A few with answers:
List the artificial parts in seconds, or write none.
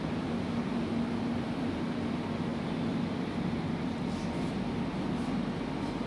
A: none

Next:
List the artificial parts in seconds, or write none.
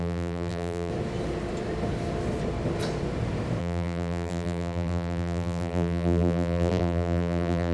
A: 0.0-0.9; 3.6-7.7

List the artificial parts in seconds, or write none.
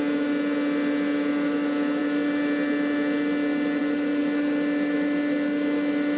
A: none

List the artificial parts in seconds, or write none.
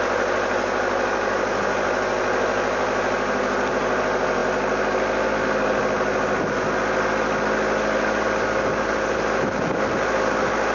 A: none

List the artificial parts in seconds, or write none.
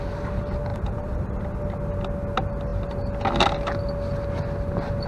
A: 0.7-1.4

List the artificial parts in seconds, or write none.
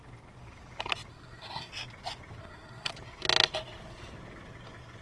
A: 1.1-1.7; 2.4-2.9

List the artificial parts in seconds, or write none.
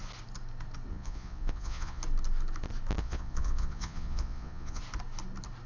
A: 0.9-2.0; 3.0-4.8